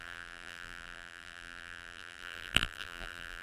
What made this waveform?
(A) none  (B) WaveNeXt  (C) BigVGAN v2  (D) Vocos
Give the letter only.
C